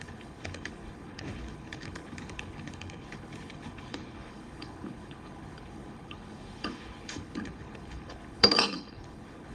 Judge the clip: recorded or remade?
remade